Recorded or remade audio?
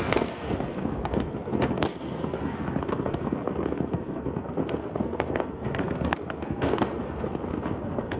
remade